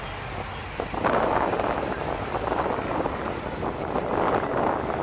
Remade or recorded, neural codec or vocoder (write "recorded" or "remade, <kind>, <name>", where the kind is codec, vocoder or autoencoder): recorded